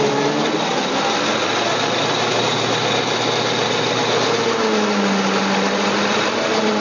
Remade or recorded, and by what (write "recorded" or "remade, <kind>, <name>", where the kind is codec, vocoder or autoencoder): recorded